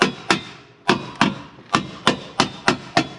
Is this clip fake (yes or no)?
no